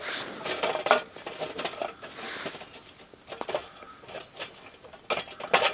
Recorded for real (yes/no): yes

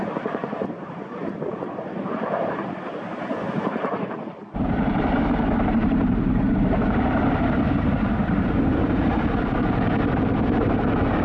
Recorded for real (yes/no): no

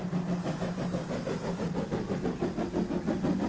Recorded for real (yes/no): yes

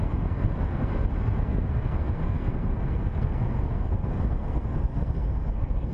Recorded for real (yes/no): no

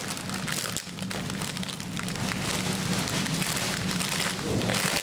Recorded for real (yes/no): yes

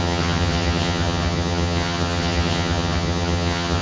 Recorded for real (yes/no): no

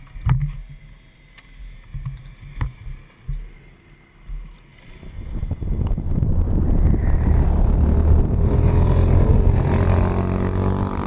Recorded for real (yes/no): yes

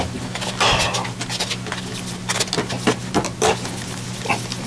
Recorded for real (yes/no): yes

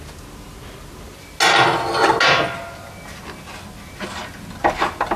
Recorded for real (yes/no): yes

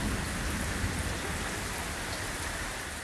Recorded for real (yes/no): yes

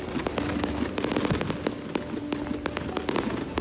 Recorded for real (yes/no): yes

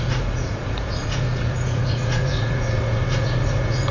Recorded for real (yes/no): no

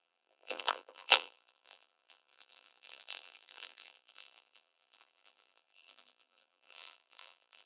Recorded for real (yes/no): no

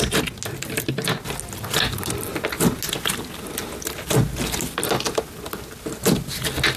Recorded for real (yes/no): yes